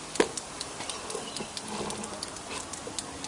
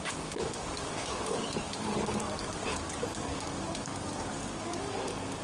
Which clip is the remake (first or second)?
second